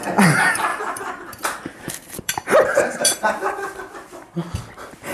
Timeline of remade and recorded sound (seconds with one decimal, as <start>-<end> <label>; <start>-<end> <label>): 0.0-0.7 recorded; 0.7-3.8 remade; 3.8-5.1 recorded